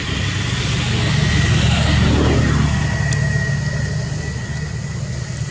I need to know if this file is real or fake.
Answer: real